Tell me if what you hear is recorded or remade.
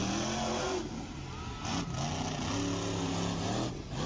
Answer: recorded